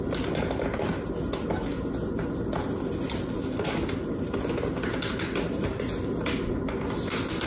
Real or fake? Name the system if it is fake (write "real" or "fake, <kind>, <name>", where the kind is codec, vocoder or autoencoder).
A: real